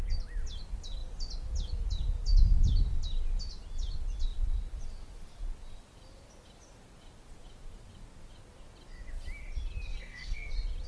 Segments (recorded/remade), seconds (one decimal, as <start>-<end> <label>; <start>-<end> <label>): 0.0-9.9 recorded; 9.9-10.5 remade; 10.5-10.9 recorded

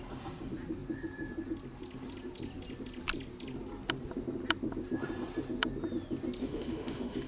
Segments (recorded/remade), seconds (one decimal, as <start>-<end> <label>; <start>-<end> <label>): 0.0-6.4 recorded; 6.4-7.3 remade

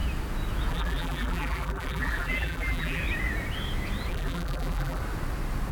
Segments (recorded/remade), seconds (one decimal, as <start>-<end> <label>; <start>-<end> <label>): 0.0-0.7 recorded; 0.7-3.0 remade; 3.0-4.1 recorded; 4.1-5.0 remade; 5.0-5.7 recorded

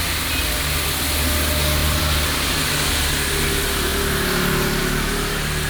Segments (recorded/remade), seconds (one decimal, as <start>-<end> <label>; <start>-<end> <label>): 0.0-1.8 recorded; 1.8-2.7 remade; 2.7-3.9 recorded; 3.9-4.8 remade; 4.8-5.7 recorded

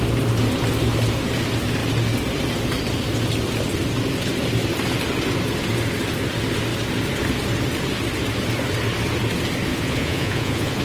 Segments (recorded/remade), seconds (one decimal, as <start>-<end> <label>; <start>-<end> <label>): 0.0-9.7 recorded; 9.7-10.8 remade

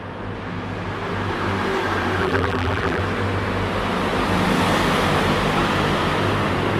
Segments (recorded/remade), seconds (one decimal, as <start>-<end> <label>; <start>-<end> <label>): 0.0-2.2 recorded; 2.2-3.0 remade; 3.0-6.8 recorded

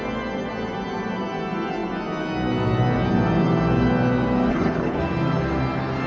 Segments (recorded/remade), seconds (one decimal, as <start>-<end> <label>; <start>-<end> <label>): 0.0-4.5 recorded; 4.5-5.0 remade; 5.0-6.1 recorded